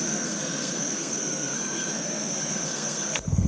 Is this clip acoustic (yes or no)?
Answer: no